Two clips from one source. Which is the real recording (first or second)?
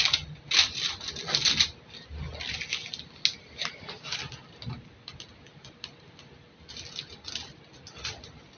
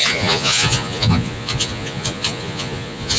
first